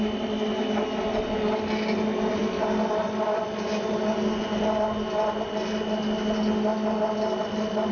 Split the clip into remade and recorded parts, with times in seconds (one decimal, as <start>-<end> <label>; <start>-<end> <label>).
0.0-7.9 recorded